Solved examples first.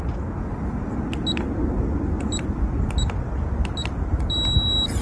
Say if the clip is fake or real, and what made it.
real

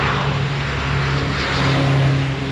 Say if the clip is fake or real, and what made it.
real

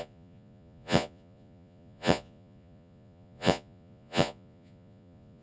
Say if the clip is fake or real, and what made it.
fake, vocoder, Vocos